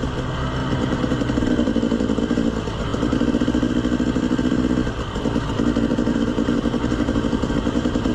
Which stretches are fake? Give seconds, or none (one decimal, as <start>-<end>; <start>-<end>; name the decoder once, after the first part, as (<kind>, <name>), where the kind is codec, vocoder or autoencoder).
0.6-2.2 (vocoder, BigVGAN v2); 5.9-8.1